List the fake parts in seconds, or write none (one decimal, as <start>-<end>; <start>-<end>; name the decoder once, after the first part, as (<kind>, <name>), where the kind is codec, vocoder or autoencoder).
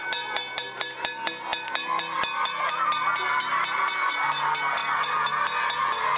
4.8-5.3 (vocoder, BigVGAN v2)